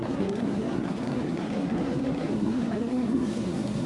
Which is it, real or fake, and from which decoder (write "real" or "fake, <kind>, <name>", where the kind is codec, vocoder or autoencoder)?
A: fake, codec, SNAC